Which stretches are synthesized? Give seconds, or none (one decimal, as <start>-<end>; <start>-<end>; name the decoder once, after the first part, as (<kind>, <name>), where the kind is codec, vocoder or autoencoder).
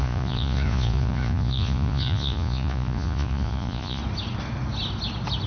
0.0-4.0 (vocoder, Vocos)